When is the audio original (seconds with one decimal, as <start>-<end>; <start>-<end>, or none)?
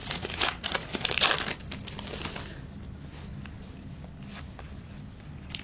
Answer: 1.0-5.6